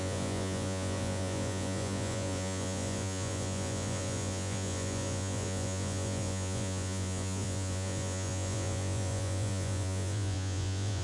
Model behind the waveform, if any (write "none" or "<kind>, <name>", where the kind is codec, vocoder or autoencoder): vocoder, Vocos